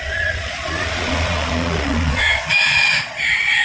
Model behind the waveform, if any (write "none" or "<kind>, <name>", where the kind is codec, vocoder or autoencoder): vocoder, Vocos